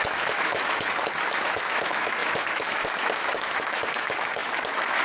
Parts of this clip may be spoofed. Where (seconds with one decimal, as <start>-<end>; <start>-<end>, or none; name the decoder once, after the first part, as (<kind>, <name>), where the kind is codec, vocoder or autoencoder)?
0.0-5.0 (autoencoder, DAC-VAE)

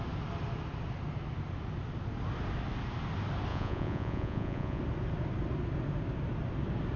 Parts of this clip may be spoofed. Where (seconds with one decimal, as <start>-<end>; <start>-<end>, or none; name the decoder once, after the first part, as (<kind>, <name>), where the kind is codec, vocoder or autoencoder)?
3.5-4.8 (vocoder, Vocos)